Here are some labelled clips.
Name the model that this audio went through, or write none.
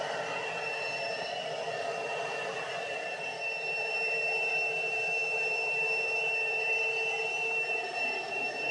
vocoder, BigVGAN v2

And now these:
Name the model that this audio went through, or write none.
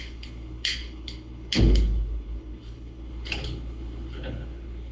codec, HILCodec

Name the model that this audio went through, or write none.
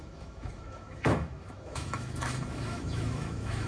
autoencoder, DAC-VAE